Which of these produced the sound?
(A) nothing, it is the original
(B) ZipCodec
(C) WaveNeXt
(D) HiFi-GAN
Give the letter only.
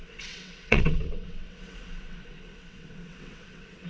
C